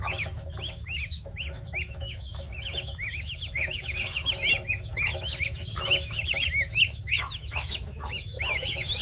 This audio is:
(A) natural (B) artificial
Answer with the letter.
B